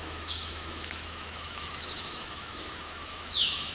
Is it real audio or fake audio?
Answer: fake